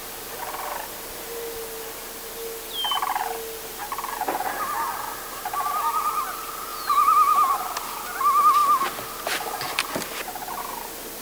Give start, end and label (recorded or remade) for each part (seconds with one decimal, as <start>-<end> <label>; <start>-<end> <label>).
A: 0.0-6.7 recorded; 6.7-7.5 remade; 7.5-11.2 recorded

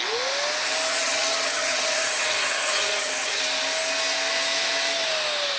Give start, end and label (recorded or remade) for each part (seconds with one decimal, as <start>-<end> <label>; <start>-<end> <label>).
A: 0.0-0.9 recorded; 0.9-3.4 remade; 3.4-5.6 recorded

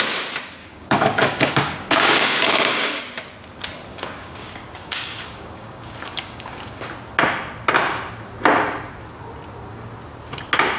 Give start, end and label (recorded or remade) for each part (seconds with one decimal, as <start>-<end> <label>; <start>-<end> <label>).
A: 0.0-0.6 recorded; 0.6-3.0 remade; 3.0-3.9 recorded; 3.9-6.9 remade; 6.9-10.8 recorded